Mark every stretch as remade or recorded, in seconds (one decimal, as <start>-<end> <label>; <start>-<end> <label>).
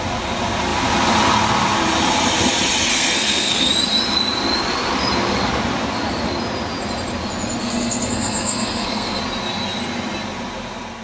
0.0-2.9 recorded; 2.9-3.7 remade; 3.7-7.6 recorded; 7.6-9.2 remade; 9.2-11.0 recorded